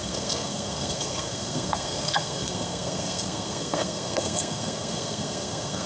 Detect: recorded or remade remade